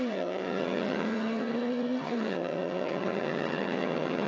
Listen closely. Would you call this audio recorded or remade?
remade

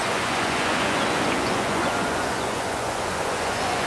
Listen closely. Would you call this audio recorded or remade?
remade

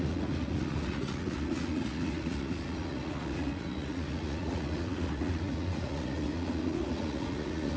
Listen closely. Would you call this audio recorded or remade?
remade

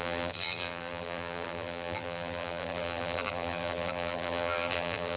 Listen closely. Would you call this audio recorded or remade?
remade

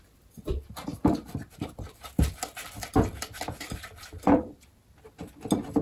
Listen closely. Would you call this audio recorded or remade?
recorded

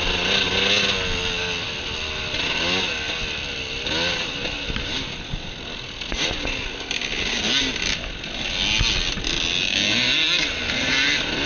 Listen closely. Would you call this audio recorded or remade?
recorded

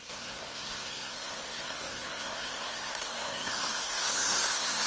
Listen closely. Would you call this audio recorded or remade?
remade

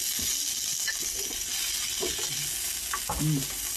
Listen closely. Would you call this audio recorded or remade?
recorded